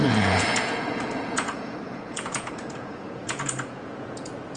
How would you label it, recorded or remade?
remade